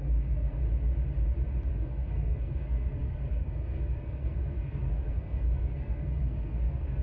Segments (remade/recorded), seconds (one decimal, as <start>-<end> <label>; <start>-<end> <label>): 0.0-0.6 remade; 0.6-1.7 recorded; 1.7-7.0 remade